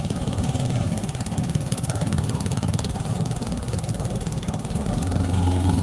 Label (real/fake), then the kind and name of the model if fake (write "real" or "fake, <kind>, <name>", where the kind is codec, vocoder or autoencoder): fake, codec, SNAC